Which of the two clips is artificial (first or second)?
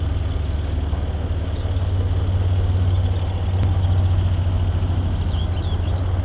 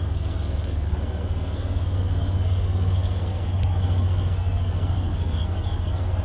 second